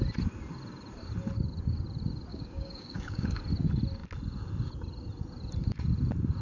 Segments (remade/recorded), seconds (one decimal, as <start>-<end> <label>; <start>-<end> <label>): 0.0-2.3 recorded; 2.3-3.4 remade; 3.4-6.4 recorded